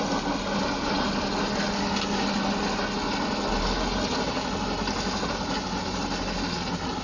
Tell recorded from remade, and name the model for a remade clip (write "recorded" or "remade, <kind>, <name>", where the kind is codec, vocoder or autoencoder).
recorded